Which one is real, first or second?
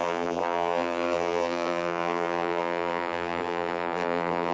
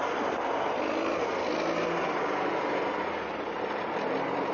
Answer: second